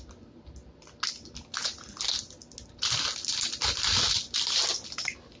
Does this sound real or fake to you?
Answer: real